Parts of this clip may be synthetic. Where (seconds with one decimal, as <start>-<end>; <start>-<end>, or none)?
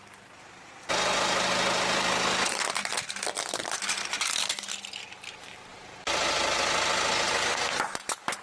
none